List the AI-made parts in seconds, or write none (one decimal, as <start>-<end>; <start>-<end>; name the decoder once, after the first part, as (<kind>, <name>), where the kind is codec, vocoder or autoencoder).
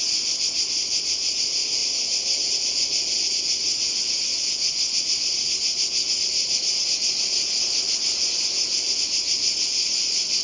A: none